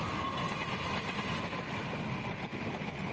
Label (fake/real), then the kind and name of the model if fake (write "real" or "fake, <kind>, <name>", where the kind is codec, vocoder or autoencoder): real